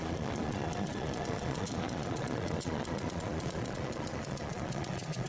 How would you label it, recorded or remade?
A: remade